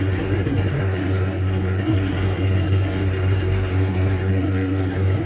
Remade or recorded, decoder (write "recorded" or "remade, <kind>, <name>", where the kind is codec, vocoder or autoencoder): remade, codec, SNAC